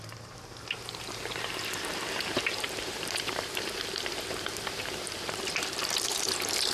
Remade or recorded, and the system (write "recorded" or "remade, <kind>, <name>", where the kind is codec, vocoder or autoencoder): remade, vocoder, BigVGAN v2